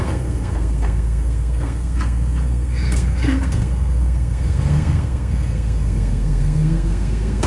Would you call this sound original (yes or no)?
no